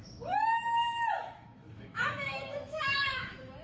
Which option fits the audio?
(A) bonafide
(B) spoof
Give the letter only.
B